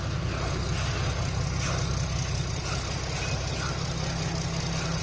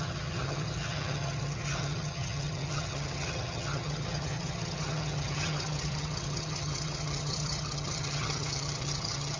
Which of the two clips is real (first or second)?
first